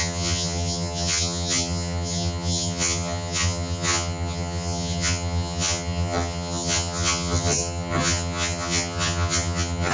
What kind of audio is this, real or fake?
fake